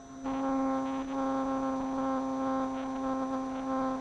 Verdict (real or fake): real